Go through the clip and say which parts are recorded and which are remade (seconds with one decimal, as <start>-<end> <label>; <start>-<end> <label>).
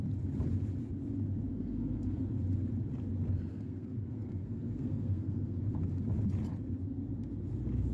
0.0-1.5 recorded; 1.5-2.2 remade; 2.2-3.5 recorded; 3.5-5.6 remade; 5.6-7.9 recorded